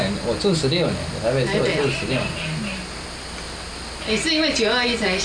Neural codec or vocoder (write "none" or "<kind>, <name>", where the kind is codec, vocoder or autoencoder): none